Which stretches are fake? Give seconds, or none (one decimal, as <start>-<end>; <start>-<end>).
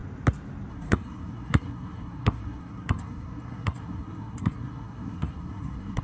0.7-6.0